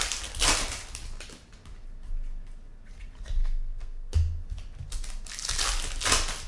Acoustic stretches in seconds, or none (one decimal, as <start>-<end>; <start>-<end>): 0.0-3.4; 4.1-6.5